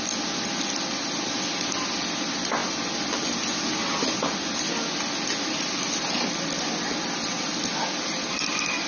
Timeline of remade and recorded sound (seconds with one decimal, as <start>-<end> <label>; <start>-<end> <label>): 0.0-8.9 recorded